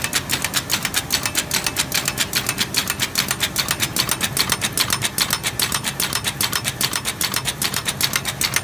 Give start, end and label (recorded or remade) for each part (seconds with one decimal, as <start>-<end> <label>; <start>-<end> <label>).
0.0-5.4 recorded; 5.4-8.0 remade; 8.0-8.6 recorded